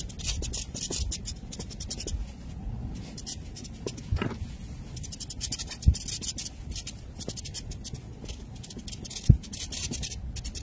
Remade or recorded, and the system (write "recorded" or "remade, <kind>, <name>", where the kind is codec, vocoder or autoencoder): recorded